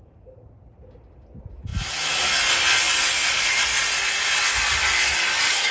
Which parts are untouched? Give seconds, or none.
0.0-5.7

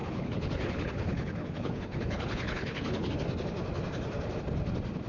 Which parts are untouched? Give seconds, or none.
3.1-5.1